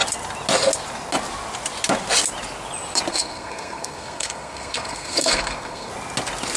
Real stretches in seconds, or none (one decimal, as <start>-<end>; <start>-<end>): 0.0-3.1; 5.9-6.6